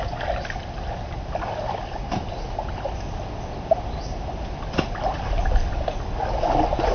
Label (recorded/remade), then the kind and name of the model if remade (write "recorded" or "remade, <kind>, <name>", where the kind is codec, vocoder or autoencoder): recorded